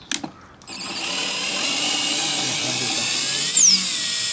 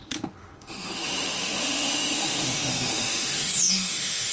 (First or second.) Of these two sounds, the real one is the first